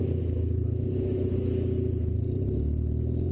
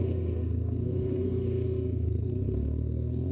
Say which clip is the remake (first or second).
second